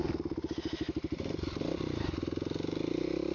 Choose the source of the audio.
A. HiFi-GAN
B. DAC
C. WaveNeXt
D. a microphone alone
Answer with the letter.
D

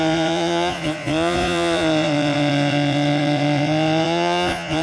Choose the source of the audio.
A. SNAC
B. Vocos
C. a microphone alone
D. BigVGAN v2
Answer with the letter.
B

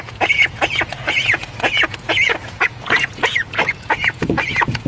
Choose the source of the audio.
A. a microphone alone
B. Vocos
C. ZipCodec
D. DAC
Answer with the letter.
B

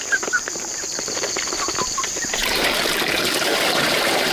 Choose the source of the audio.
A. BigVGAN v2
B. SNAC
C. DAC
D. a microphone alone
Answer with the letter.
A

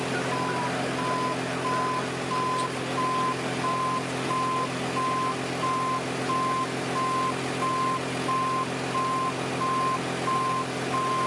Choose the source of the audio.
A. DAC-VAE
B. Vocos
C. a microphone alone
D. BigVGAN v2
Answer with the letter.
C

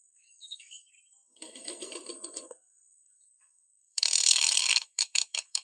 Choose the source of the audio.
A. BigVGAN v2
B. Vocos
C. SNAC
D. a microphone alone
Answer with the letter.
C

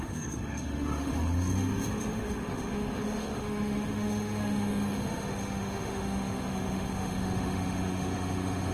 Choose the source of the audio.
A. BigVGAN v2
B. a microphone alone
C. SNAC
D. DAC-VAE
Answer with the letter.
D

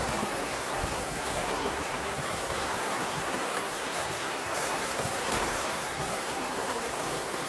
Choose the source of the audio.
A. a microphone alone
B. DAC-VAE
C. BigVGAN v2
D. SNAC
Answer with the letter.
D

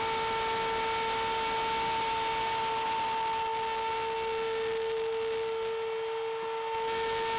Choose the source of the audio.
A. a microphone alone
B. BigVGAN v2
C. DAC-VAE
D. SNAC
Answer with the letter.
A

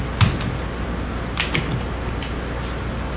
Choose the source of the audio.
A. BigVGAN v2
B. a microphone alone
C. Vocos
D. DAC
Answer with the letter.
B